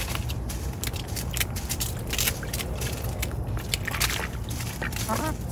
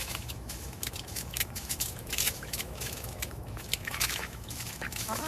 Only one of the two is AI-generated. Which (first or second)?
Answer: second